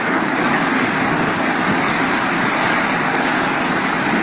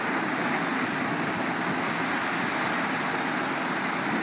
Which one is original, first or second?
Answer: second